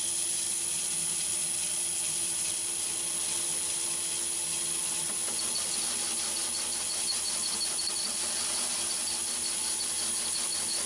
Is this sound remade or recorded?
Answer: recorded